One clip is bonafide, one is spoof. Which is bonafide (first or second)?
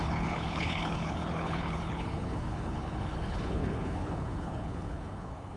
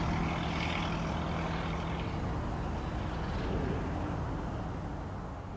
second